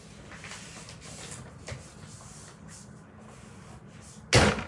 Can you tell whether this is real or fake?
real